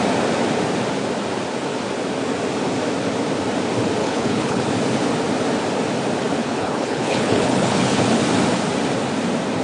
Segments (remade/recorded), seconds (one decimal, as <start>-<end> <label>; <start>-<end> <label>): 0.0-4.0 recorded; 4.0-4.6 remade; 4.6-6.4 recorded; 6.4-8.0 remade; 8.0-9.6 recorded